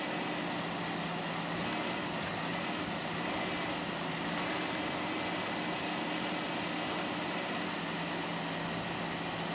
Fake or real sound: real